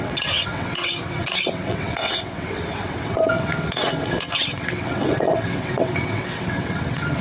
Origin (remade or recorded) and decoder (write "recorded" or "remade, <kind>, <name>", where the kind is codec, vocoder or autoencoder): remade, vocoder, WaveNeXt